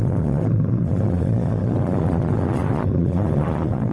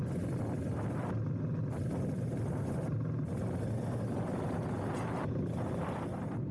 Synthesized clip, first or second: first